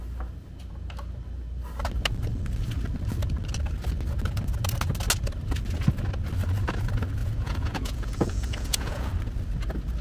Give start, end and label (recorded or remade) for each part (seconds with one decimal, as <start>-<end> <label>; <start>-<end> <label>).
0.0-7.2 recorded; 7.2-9.1 remade; 9.1-10.0 recorded